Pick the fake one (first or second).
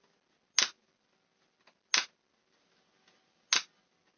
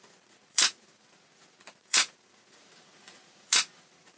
second